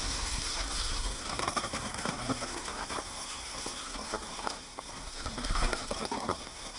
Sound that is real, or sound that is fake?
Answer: fake